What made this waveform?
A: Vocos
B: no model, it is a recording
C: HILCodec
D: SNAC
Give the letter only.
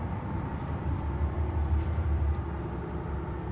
B